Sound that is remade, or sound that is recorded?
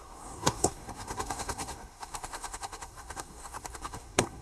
remade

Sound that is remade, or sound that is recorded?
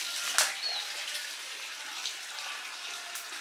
recorded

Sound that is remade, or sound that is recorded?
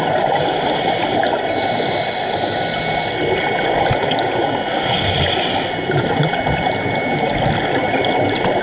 recorded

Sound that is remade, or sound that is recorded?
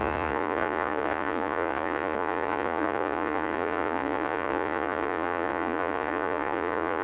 remade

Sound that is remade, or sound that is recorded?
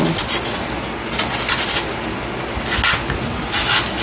recorded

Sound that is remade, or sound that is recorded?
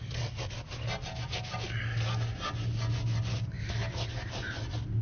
recorded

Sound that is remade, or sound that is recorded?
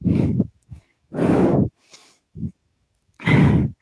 remade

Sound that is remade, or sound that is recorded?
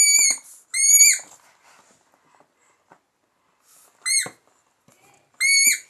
recorded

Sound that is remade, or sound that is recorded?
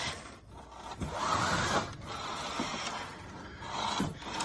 recorded